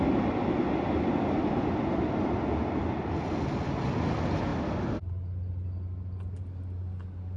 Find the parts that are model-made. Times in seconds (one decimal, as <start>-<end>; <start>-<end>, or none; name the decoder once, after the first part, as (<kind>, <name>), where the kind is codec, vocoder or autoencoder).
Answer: none